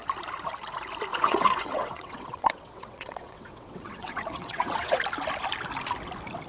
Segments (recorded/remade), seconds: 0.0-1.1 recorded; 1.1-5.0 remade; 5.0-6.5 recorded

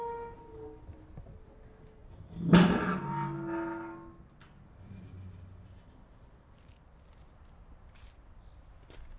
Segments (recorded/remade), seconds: 0.0-9.2 recorded

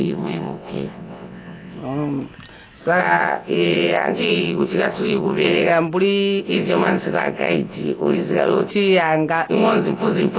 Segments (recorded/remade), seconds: 0.0-1.8 remade; 1.8-3.0 recorded; 3.0-5.7 remade; 5.7-6.4 recorded; 6.4-8.7 remade; 8.7-9.5 recorded; 9.5-10.4 remade